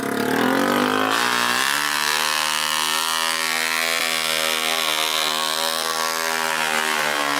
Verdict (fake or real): real